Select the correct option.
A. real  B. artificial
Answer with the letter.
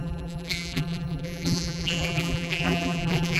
B